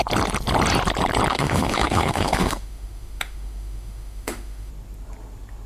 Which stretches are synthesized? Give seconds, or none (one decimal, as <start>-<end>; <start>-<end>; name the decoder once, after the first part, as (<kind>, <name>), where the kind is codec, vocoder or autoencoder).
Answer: 1.3-4.7 (autoencoder, DAC-VAE)